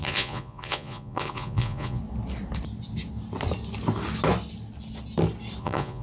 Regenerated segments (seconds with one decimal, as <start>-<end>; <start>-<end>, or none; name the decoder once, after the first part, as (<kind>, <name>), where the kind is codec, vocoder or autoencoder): 0.0-2.0 (vocoder, Vocos); 5.6-6.0